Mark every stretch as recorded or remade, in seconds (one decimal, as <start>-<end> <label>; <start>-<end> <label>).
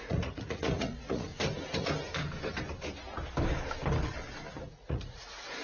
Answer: 0.0-1.3 remade; 1.3-4.7 recorded; 4.7-5.6 remade